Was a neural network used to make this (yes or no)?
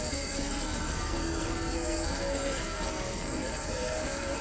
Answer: yes